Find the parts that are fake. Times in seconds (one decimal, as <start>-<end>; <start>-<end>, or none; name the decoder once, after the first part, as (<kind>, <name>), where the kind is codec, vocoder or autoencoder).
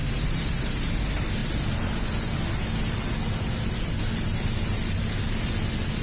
0.0-0.8 (vocoder, BigVGAN v2)